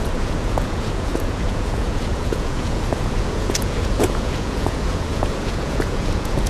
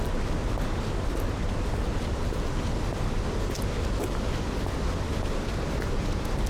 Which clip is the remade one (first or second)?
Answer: first